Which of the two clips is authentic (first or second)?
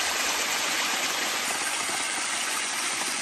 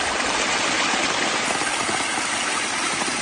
second